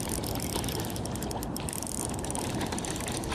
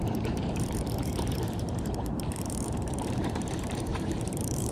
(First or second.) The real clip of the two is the first